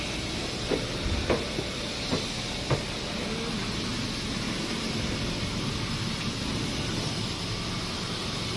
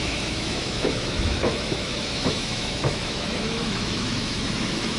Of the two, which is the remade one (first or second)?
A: second